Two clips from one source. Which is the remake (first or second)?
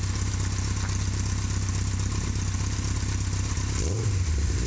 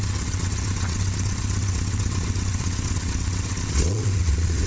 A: second